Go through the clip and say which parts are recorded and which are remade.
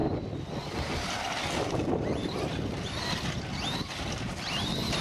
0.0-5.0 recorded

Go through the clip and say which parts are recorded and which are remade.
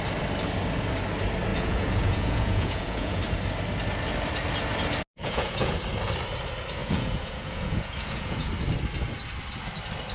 0.0-1.5 recorded; 1.5-3.2 remade; 3.2-5.2 recorded; 5.2-5.8 remade; 5.8-6.8 recorded; 6.8-8.5 remade; 8.5-10.1 recorded